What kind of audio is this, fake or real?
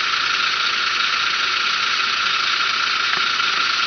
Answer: real